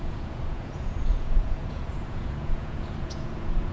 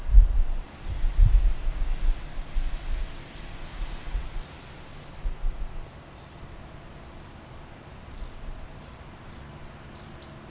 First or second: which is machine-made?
first